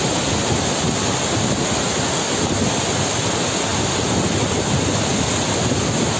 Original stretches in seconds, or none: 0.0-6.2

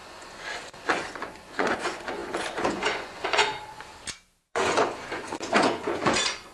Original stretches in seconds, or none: 3.9-4.4

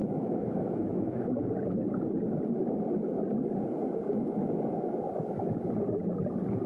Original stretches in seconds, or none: 1.3-6.7

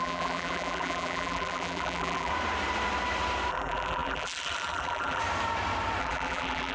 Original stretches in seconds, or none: 2.3-3.5; 5.2-6.0